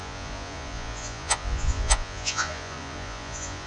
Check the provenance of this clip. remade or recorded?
remade